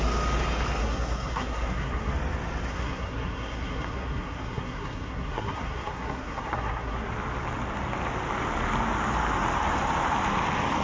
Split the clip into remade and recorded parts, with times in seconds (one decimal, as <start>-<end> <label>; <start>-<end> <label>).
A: 0.0-0.8 recorded; 0.8-2.1 remade; 2.1-2.7 recorded; 2.7-7.1 remade; 7.1-10.8 recorded